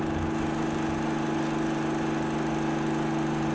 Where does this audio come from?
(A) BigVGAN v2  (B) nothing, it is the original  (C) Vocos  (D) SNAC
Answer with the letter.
B